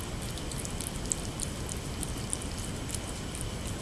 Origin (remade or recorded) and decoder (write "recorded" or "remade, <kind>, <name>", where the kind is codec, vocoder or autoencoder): recorded